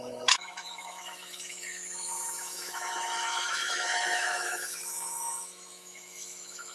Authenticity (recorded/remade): remade